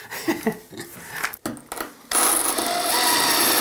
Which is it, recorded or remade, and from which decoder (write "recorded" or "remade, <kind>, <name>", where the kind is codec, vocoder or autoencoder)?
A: recorded